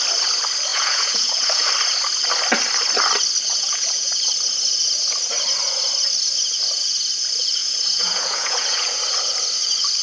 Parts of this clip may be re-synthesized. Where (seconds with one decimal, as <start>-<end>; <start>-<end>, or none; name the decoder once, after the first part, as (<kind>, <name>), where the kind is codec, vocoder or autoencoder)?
0.7-1.7 (vocoder, Vocos); 3.5-4.1; 7.6-9.0